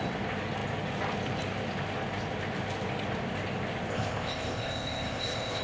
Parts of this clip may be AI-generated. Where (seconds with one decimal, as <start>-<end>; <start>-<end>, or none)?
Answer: 3.9-5.6